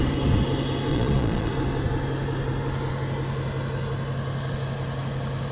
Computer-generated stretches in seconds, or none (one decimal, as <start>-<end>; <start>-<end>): 0.9-1.5

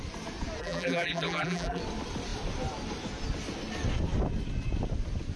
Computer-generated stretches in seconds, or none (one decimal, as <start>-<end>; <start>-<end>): 0.6-1.8

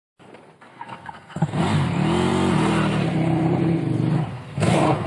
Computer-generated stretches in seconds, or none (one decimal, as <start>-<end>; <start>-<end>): 0.7-1.6; 4.3-5.1

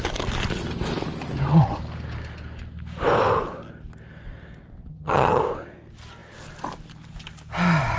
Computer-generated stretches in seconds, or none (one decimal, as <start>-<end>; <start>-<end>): 4.9-5.4

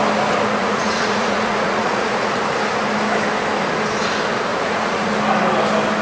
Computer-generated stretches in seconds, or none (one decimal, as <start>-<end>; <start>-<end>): 0.6-2.4; 4.5-5.1

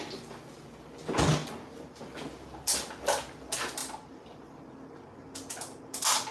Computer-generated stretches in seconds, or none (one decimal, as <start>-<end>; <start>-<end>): 1.4-2.0; 3.8-4.7

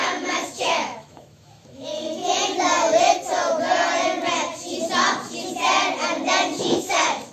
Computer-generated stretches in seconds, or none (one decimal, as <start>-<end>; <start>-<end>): 0.0-2.2; 6.6-7.3

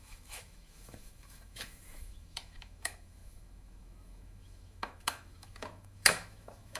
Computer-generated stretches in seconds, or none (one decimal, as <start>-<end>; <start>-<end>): 0.0-6.8